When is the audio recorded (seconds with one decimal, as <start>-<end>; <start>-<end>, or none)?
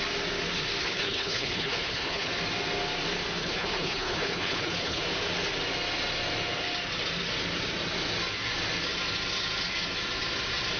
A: 0.0-0.8; 2.3-3.4; 5.0-10.8